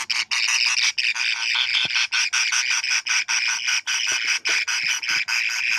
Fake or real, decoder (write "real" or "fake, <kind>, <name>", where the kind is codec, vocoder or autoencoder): real